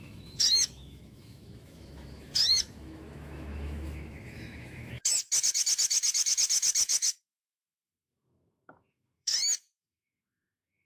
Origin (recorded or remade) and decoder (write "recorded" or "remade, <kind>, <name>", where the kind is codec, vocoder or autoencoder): remade, autoencoder, DAC-VAE